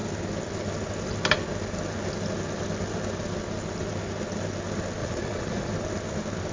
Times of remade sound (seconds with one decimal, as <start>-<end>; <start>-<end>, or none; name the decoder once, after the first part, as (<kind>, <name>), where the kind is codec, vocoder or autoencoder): 5.0-5.7 (vocoder, Vocos)